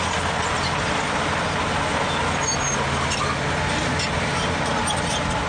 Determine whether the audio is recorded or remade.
recorded